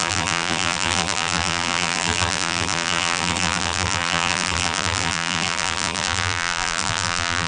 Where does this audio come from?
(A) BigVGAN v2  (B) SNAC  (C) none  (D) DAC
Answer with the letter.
A